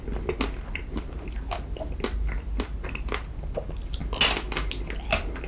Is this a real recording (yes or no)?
yes